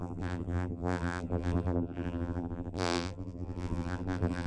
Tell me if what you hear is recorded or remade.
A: remade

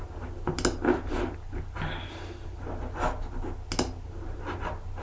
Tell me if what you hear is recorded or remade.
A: recorded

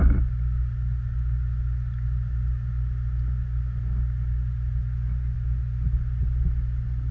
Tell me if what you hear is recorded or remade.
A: recorded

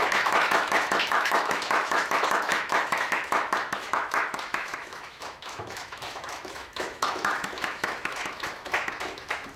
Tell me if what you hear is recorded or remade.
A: remade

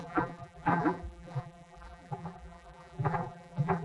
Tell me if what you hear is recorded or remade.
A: remade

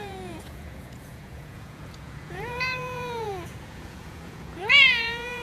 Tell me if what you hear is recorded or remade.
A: remade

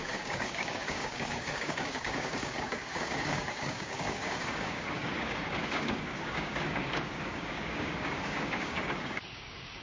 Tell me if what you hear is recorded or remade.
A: remade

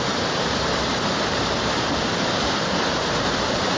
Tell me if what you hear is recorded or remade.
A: remade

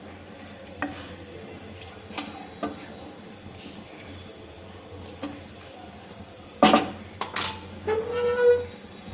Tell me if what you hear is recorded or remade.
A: recorded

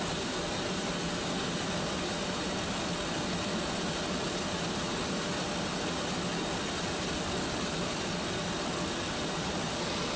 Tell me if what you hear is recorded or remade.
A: recorded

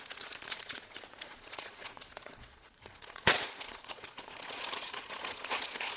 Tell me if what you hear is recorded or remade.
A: remade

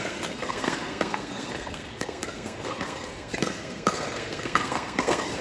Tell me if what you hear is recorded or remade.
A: remade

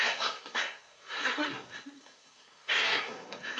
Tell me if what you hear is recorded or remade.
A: remade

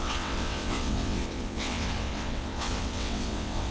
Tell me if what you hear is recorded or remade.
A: remade